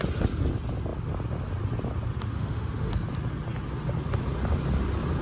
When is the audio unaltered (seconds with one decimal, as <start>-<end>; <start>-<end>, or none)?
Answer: 0.0-2.3; 2.9-5.2